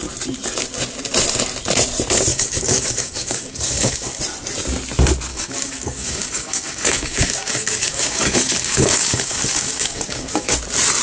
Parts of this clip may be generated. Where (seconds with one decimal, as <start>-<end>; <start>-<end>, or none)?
2.3-4.2; 5.3-10.5